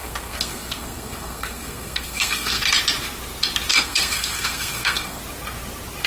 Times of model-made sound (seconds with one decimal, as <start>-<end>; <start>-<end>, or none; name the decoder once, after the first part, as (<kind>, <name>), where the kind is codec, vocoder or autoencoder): 0.0-2.6 (codec, SNAC); 3.7-5.2